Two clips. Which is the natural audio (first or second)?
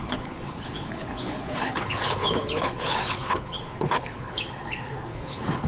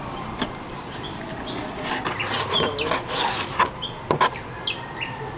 second